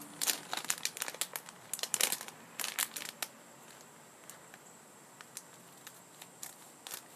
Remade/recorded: recorded